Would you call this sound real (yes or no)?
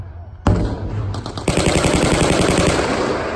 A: yes